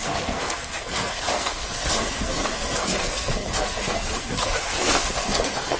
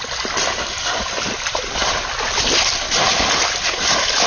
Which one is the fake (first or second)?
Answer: first